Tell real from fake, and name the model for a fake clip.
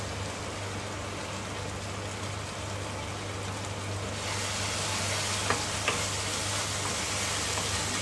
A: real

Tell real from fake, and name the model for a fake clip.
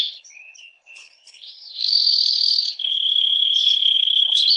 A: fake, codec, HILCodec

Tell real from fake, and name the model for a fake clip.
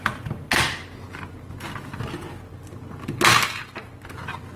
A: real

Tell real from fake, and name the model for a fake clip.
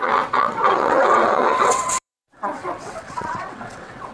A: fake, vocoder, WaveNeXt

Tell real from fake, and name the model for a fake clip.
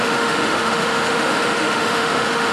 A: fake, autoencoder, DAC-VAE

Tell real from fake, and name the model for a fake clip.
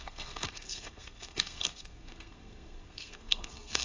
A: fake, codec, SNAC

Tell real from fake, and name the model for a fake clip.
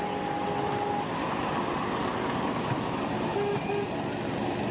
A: real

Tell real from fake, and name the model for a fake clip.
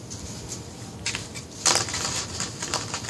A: real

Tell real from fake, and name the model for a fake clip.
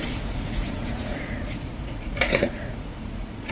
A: fake, vocoder, Vocos